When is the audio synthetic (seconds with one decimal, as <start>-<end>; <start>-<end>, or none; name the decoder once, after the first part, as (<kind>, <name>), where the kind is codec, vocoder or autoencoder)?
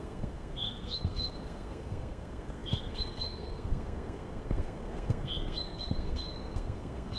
0.0-7.2 (codec, SNAC)